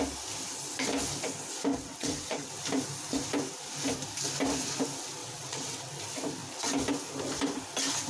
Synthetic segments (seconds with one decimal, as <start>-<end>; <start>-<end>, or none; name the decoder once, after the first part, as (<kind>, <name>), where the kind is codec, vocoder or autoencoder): 1.7-2.5 (vocoder, WaveNeXt); 5.2-5.9